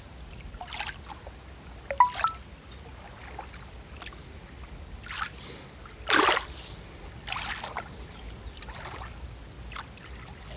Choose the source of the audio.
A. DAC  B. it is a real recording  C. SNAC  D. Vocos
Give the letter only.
B